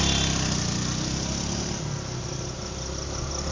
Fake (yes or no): no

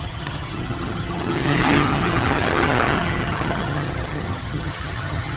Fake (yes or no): yes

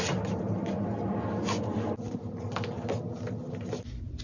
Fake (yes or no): no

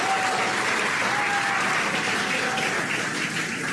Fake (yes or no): no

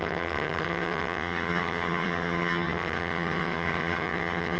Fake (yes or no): yes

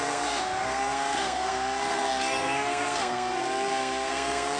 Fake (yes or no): yes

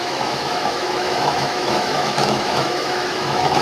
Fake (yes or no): yes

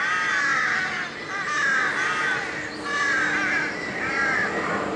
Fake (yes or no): no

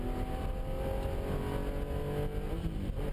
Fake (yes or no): no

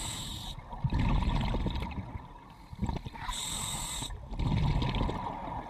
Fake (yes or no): no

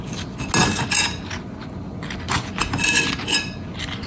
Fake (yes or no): no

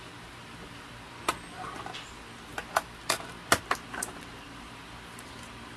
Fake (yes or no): no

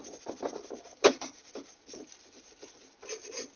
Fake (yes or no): no